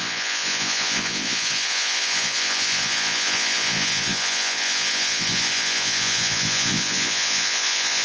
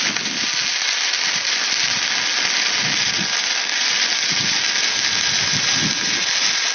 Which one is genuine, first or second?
second